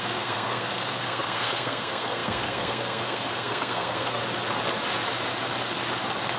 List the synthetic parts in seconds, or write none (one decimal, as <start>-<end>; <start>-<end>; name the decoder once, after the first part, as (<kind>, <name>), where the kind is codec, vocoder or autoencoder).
0.0-4.2 (codec, SNAC)